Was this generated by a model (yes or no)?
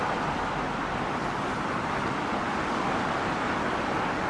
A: no